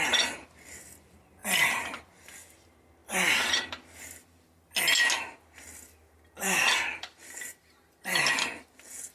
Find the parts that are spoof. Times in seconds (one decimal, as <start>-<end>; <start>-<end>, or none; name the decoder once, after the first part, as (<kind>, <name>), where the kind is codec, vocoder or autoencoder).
3.0-3.7 (vocoder, BigVGAN v2); 6.9-8.2